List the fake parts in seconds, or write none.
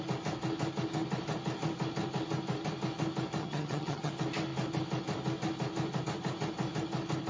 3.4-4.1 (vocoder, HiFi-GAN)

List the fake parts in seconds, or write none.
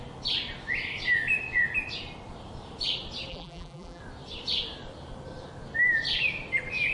3.3-4.0 (vocoder, BigVGAN v2)